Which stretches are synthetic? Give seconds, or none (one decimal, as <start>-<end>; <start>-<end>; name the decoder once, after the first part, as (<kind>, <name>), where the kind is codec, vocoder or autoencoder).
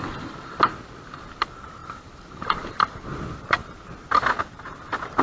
1.8-2.9 (vocoder, BigVGAN v2)